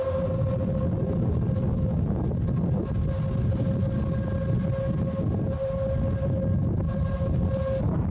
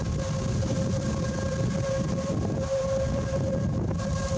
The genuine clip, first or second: first